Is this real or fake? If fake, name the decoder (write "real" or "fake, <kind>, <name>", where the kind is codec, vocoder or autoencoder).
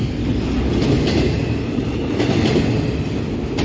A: real